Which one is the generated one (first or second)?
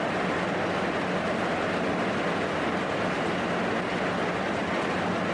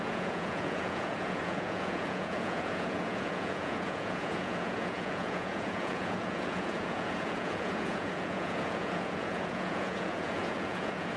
second